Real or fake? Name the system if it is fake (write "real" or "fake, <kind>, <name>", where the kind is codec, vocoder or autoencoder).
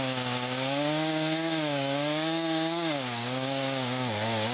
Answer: fake, codec, DAC